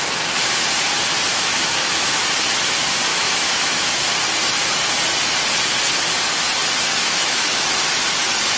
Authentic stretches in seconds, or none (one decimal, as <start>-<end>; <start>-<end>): 0.0-1.3; 2.2-3.1; 4.1-7.0; 7.9-8.6